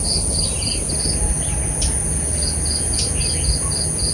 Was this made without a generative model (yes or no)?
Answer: yes